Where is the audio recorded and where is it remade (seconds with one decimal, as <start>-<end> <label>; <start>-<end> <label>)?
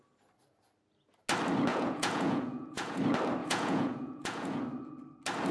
0.0-1.7 recorded; 1.7-3.0 remade; 3.0-3.4 recorded; 3.4-4.6 remade; 4.6-5.5 recorded